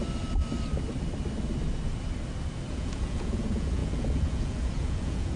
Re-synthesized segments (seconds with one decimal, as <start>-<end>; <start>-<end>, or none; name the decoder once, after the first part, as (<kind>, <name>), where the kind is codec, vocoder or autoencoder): 2.7-5.4 (vocoder, Vocos)